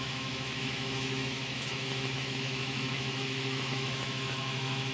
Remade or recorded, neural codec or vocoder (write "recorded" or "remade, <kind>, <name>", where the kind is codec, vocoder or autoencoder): remade, autoencoder, DAC-VAE